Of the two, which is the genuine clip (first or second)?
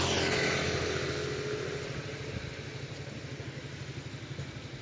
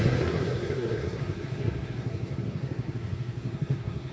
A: first